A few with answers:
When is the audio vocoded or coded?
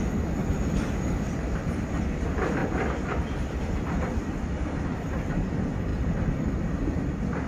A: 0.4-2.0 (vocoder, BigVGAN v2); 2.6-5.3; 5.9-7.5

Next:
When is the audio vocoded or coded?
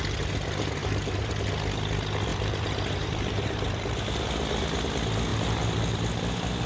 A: 0.8-1.3 (vocoder, BigVGAN v2); 2.3-4.3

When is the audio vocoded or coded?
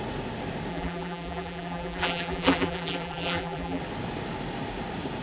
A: 0.7-3.8 (vocoder, BigVGAN v2)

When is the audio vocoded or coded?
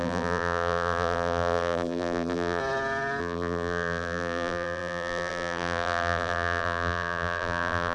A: 0.0-2.6 (vocoder, BigVGAN v2); 3.2-7.9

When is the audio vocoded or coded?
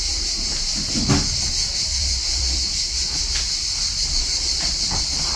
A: 1.5-5.4 (vocoder, BigVGAN v2)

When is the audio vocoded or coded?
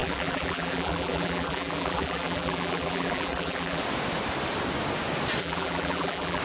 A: 0.0-3.8 (vocoder, BigVGAN v2); 5.4-6.4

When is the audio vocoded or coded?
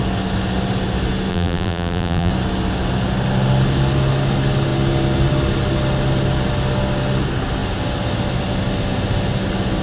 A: 1.3-2.3 (vocoder, BigVGAN v2)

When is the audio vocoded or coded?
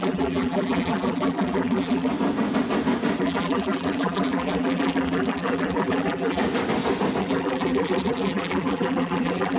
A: 0.0-2.1 (vocoder, BigVGAN v2); 3.2-6.4; 7.2-9.6